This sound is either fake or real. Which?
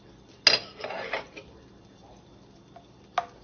real